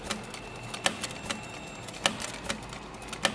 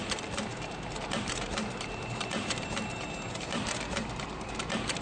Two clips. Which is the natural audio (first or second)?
first